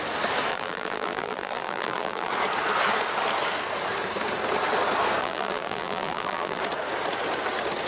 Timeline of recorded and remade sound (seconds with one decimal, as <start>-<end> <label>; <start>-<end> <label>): 0.0-0.5 recorded; 0.5-2.3 remade; 2.3-5.2 recorded; 5.2-6.6 remade; 6.6-7.9 recorded